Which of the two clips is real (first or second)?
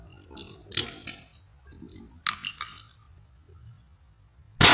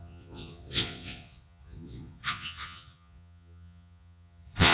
first